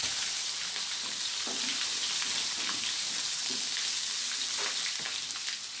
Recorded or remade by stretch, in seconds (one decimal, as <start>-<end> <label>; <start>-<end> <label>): 0.0-5.8 recorded